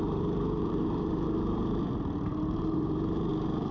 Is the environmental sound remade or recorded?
remade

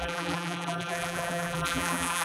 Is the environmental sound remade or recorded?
remade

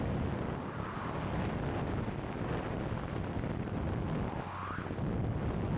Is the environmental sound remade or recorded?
recorded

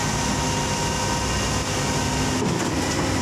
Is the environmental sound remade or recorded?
recorded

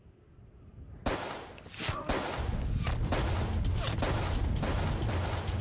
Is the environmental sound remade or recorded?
recorded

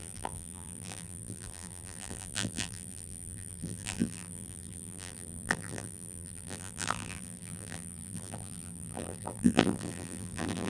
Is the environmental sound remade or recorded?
remade